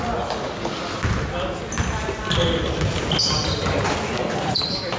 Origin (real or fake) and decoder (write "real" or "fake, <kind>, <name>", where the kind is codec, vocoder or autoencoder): real